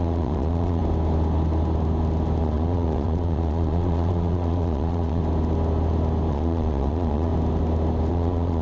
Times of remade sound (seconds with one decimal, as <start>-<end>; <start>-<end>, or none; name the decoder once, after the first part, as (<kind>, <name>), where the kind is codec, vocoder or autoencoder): 0.0-0.8 (vocoder, Vocos); 2.4-5.2; 6.3-7.3; 8.1-8.6